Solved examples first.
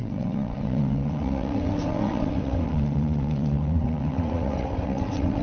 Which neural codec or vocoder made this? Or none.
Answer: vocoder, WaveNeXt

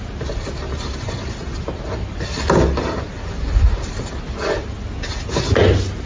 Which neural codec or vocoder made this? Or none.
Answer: none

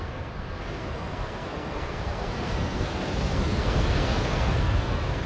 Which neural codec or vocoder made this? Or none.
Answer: codec, SNAC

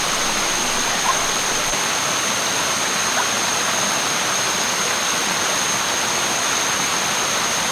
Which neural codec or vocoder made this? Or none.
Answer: none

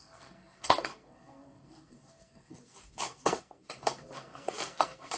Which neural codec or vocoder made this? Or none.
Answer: codec, SNAC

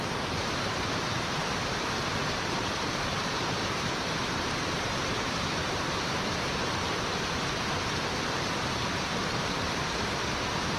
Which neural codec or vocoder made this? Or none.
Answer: vocoder, BigVGAN v2